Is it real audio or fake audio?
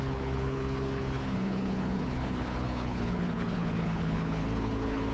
fake